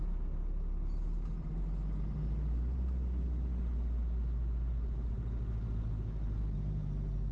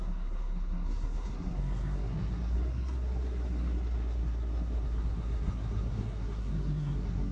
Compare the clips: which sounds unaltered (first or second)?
first